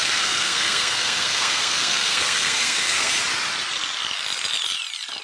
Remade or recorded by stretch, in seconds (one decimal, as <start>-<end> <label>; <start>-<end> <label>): 0.0-3.1 remade; 3.1-5.2 recorded